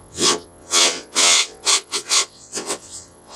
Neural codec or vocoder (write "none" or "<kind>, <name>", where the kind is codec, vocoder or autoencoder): vocoder, WaveNeXt